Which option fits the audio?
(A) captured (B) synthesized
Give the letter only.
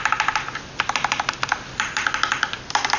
A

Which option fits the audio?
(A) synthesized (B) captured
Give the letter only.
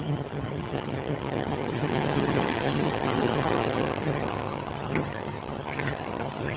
A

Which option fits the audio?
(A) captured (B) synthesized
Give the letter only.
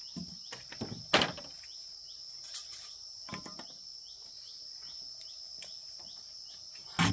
A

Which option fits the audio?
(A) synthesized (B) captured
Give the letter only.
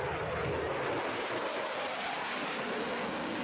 B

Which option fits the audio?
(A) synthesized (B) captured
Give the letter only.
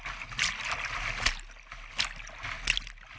B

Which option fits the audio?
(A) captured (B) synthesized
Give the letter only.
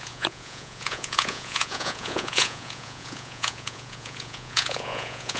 B